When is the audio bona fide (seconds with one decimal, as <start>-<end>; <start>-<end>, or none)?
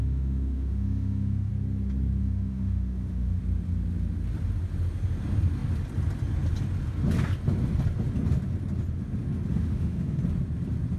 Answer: 1.5-2.2; 3.4-9.5; 10.2-11.0